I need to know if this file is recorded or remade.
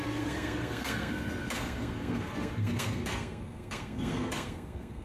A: remade